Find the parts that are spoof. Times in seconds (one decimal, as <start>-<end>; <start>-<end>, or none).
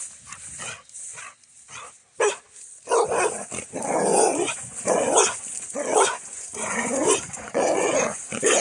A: 4.1-5.4; 5.9-8.6